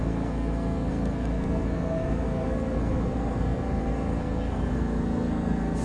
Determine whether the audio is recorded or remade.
remade